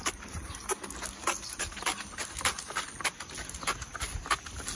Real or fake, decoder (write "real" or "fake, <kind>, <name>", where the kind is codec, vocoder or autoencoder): real